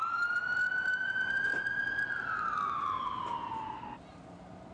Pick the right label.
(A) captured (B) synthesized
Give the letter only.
A